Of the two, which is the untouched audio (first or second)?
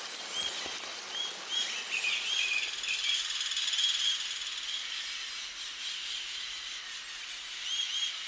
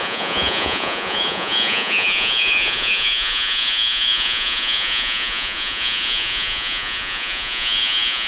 first